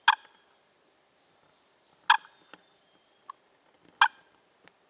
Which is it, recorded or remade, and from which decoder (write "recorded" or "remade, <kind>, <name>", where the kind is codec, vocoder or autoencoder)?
recorded